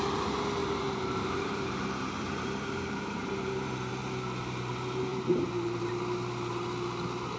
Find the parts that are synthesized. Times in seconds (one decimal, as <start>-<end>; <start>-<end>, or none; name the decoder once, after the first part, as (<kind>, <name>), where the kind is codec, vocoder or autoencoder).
0.6-3.9 (vocoder, BigVGAN v2); 5.1-5.9